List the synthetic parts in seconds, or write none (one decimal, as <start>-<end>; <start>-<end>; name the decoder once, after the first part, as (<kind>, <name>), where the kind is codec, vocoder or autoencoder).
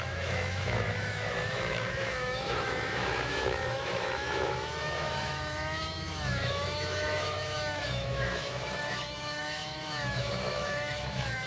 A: 0.0-11.5 (autoencoder, DAC-VAE)